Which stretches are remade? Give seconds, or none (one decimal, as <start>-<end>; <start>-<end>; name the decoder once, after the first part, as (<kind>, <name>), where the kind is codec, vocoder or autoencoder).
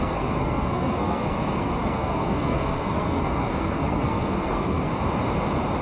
0.0-4.9 (codec, SNAC)